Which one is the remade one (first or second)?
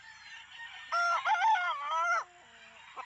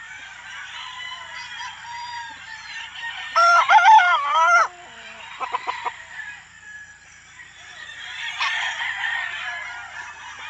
second